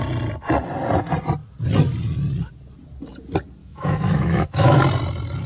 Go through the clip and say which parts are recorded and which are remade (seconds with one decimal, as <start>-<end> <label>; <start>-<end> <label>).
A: 0.0-3.6 recorded; 3.6-4.8 remade; 4.8-5.5 recorded